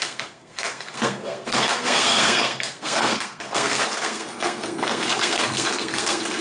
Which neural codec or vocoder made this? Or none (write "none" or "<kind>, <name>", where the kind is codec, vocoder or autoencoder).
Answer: codec, SNAC